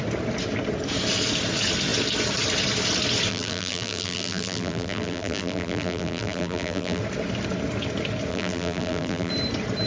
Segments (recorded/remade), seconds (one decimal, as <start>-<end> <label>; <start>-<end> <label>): 0.0-3.3 recorded; 3.3-7.0 remade; 7.0-8.3 recorded; 8.3-9.3 remade; 9.3-9.9 recorded